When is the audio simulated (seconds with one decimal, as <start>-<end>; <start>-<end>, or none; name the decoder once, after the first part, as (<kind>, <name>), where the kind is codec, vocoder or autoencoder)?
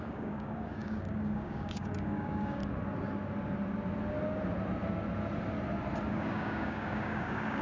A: 0.0-2.6 (codec, DAC); 6.1-7.6